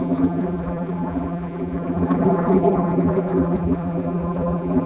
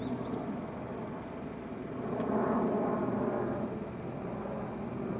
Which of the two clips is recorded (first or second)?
second